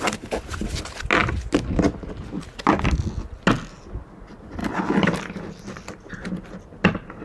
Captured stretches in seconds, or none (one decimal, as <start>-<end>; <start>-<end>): 0.0-7.2